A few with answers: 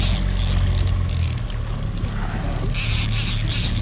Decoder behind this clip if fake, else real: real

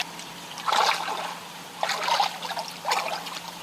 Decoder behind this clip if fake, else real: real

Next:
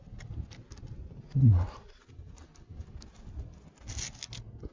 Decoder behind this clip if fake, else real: real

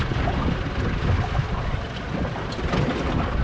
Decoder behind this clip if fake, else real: real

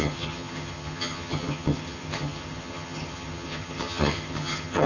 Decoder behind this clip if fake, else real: fake, vocoder, HiFi-GAN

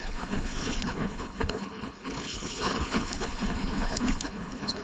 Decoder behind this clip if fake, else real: fake, codec, HILCodec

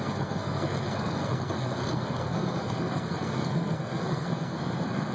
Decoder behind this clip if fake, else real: fake, codec, SNAC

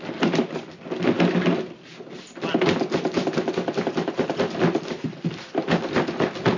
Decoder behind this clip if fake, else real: real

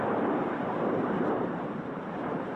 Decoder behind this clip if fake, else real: fake, vocoder, BigVGAN v2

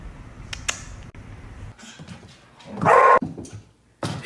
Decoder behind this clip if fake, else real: real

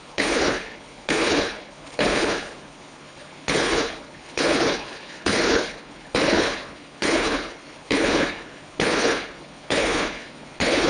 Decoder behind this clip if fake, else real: fake, codec, HILCodec